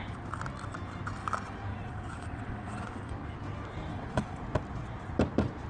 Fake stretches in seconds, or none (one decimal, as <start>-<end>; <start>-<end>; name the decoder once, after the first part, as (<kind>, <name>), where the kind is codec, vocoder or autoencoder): 1.7-3.1 (vocoder, WaveNeXt); 3.9-4.4